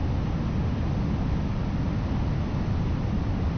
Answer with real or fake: real